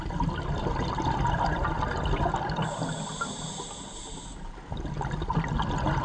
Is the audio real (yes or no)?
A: yes